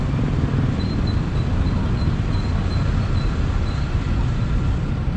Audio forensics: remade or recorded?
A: remade